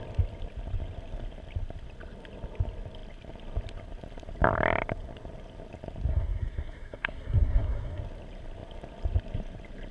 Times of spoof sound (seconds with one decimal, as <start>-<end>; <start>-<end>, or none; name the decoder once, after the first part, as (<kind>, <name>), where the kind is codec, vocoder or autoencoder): 6.1-8.0 (codec, SNAC)